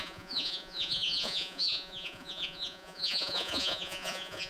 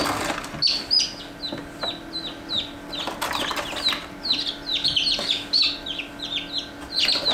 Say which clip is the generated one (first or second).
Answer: first